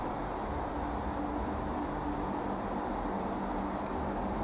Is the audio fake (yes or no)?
no